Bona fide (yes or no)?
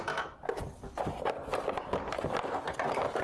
yes